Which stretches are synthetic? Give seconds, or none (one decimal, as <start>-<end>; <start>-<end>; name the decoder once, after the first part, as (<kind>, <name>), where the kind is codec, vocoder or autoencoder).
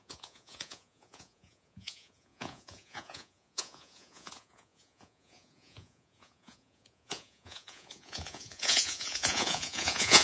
0.0-10.2 (vocoder, Vocos)